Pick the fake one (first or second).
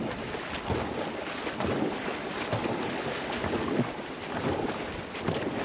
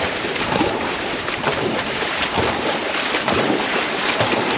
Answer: second